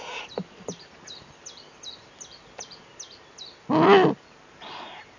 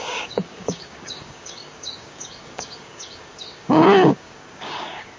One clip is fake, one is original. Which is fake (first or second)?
second